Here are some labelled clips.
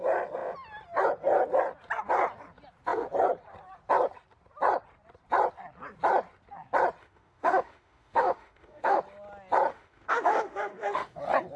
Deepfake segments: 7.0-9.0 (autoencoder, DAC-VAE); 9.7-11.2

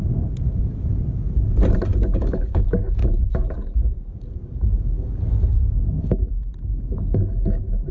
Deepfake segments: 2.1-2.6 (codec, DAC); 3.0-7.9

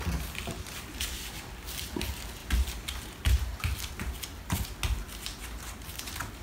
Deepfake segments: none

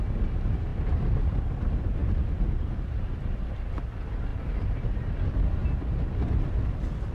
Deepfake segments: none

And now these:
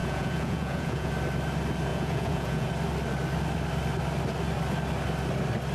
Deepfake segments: 0.0-1.1 (vocoder, Vocos); 1.9-2.7

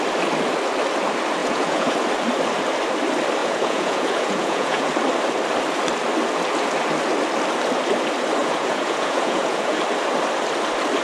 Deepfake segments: 1.4-1.9 (vocoder, Vocos); 3.4-4.9; 8.4-9.8

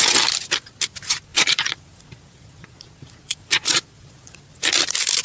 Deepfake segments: 1.3-4.4 (vocoder, Vocos)